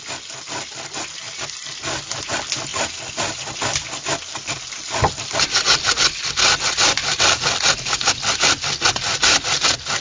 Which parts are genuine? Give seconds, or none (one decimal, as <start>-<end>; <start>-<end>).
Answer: 0.0-10.0